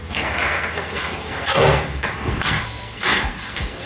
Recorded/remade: remade